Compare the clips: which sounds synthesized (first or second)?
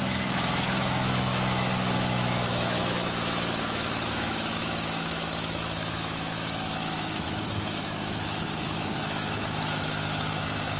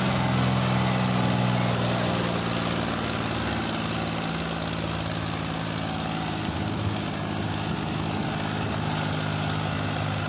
first